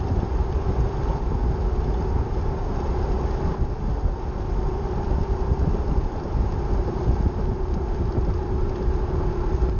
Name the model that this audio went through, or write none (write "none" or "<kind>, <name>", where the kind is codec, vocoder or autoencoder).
vocoder, BigVGAN v2